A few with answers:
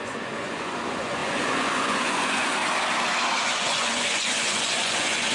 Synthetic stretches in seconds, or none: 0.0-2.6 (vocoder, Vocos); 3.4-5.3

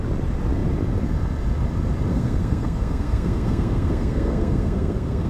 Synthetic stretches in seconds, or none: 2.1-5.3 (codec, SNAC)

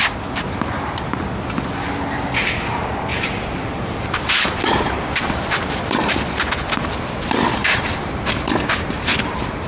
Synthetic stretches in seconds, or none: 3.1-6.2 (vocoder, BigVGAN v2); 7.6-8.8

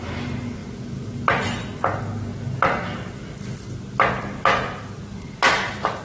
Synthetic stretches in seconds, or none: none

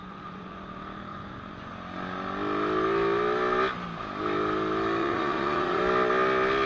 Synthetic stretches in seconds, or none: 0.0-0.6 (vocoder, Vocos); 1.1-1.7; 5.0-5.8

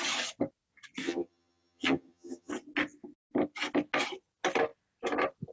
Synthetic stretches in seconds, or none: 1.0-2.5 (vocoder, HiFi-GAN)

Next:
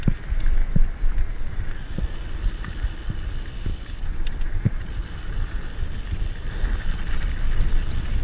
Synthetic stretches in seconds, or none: 3.7-7.1 (vocoder, BigVGAN v2)

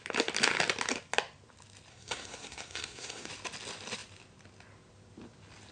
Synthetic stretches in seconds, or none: 1.9-3.3 (codec, SNAC)